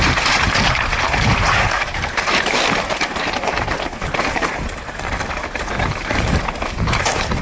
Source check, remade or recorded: remade